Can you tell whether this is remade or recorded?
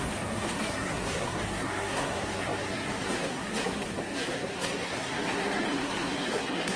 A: remade